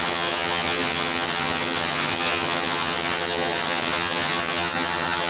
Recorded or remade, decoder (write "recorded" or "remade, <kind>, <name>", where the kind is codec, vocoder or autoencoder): remade, vocoder, HiFi-GAN